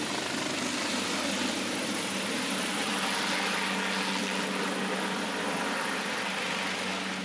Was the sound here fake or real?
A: real